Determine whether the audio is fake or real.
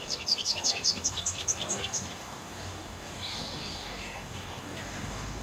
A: fake